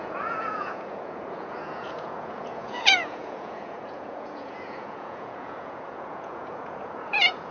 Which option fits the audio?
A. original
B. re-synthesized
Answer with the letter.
B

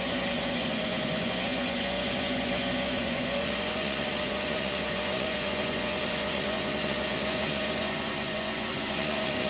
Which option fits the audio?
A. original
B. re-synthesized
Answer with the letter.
B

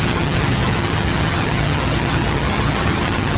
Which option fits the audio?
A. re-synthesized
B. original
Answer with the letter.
A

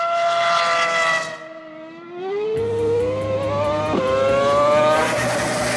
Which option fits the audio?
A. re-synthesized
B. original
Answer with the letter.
B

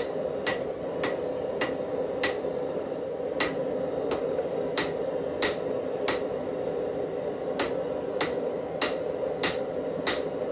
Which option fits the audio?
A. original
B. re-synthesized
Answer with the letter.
A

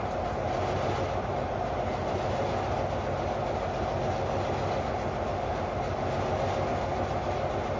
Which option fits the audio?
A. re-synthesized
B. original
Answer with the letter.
B